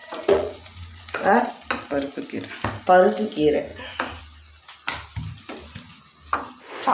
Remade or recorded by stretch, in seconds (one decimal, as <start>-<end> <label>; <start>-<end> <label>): 0.0-1.5 remade; 1.5-3.7 recorded; 3.7-4.2 remade; 4.2-6.9 recorded